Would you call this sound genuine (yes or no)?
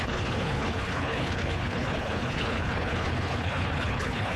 no